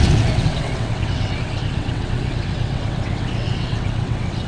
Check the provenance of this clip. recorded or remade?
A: remade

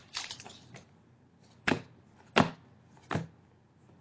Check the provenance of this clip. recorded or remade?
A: recorded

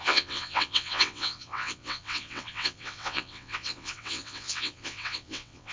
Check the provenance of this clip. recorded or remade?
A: remade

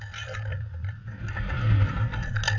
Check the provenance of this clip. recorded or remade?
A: recorded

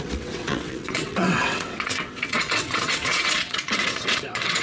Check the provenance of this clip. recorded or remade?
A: remade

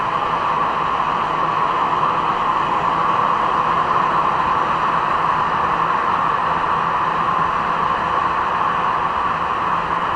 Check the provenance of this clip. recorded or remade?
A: recorded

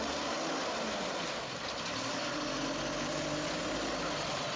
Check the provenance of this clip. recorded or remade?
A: recorded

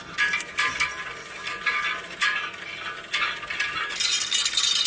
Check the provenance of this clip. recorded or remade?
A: recorded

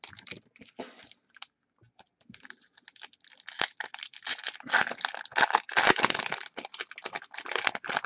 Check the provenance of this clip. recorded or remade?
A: recorded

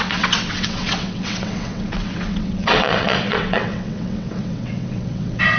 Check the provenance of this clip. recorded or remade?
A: remade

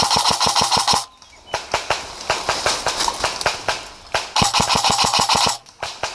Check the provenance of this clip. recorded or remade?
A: recorded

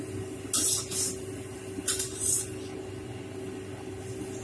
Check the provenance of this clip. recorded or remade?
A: recorded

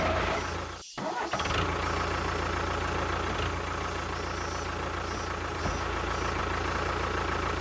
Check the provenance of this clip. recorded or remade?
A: recorded